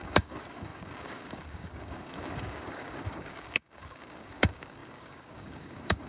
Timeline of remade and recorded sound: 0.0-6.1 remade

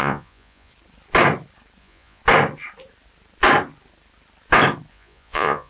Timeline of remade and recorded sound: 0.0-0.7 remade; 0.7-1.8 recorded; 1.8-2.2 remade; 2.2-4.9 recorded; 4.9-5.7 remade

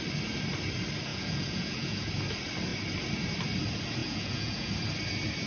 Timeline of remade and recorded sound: 0.0-1.1 recorded; 1.1-2.1 remade; 2.1-4.0 recorded; 4.0-4.7 remade; 4.7-5.5 recorded

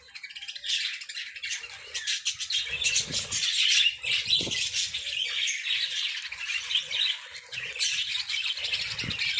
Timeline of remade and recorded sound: 0.0-9.4 recorded

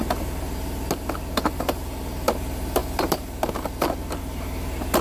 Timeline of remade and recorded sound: 0.0-5.0 recorded

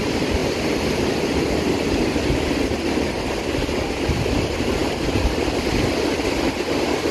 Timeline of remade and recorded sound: 0.0-7.1 recorded